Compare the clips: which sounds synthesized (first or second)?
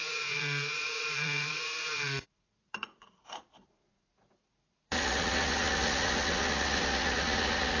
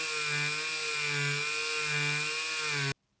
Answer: first